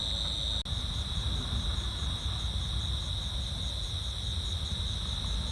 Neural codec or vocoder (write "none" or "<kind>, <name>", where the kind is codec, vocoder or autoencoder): none